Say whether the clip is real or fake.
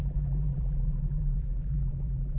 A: fake